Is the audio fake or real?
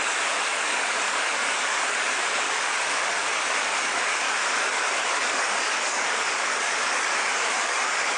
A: fake